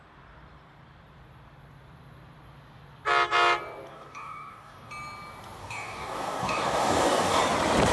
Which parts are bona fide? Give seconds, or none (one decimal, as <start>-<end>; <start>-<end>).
0.0-3.9; 4.9-5.6; 7.4-7.9